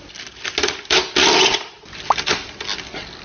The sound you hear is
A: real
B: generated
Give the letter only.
A